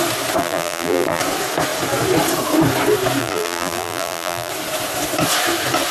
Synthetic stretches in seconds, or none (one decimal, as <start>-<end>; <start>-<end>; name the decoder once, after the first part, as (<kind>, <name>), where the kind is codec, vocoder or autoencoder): 0.4-1.2 (vocoder, BigVGAN v2); 3.2-4.5